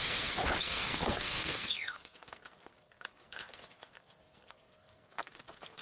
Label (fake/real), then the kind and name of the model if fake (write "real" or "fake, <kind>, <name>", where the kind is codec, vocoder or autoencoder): fake, codec, SNAC